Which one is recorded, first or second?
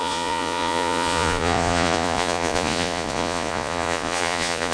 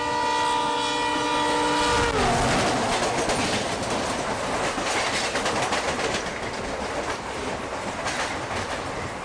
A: second